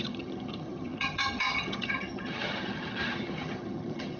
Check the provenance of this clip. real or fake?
fake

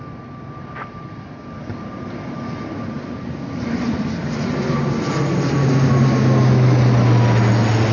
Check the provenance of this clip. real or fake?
real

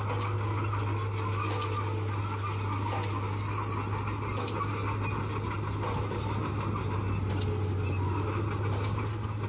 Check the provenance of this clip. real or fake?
real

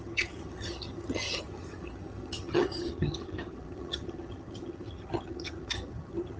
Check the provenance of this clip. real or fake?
fake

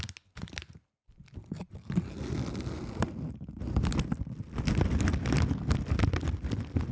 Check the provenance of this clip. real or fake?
real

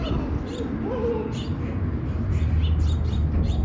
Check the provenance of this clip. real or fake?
real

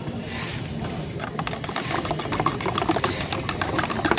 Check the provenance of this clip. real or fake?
real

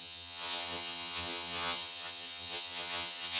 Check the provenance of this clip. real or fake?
fake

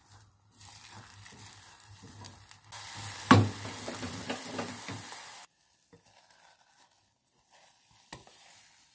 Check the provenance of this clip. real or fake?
real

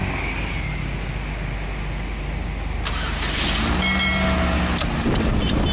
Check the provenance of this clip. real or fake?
real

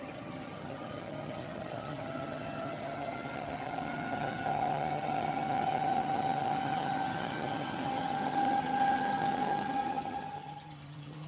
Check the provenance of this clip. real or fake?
fake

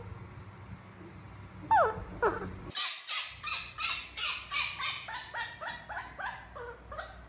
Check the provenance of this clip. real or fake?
real